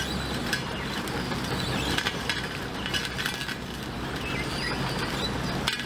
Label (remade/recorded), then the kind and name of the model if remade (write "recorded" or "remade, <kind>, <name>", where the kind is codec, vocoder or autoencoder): recorded